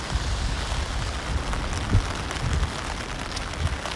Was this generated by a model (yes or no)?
no